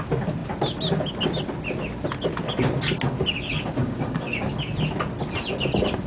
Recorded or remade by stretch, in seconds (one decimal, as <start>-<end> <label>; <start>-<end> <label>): 0.0-3.8 recorded; 3.8-4.5 remade; 4.5-6.1 recorded